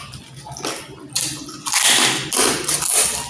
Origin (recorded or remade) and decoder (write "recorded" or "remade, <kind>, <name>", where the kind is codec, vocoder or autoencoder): recorded